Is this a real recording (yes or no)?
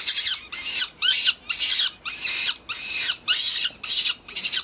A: yes